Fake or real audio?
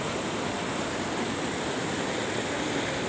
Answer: real